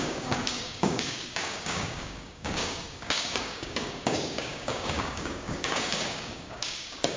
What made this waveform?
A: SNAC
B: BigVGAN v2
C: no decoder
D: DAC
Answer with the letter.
D